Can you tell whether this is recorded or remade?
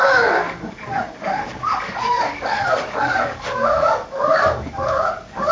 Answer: remade